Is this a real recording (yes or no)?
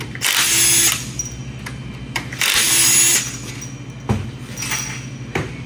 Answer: yes